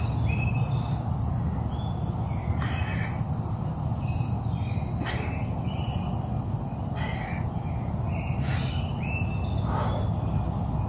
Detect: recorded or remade recorded